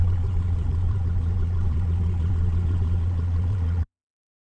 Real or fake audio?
fake